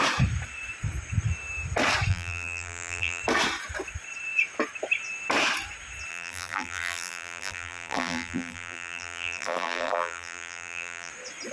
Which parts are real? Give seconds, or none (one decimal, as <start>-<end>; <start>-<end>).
0.0-2.1; 3.2-6.1; 11.1-11.5